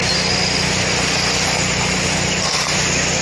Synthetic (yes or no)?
no